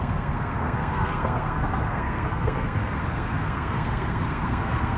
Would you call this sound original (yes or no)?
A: no